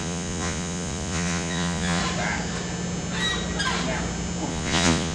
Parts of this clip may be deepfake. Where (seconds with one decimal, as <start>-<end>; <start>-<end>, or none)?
0.0-2.0; 4.5-5.1